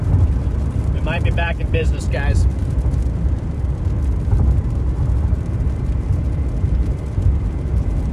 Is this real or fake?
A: fake